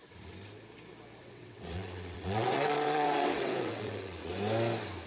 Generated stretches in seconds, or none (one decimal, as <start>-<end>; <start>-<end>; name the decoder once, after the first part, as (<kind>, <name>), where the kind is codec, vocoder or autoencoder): 1.2-4.3 (vocoder, WaveNeXt)